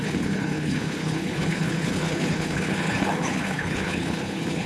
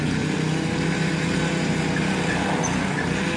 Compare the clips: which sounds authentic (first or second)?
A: second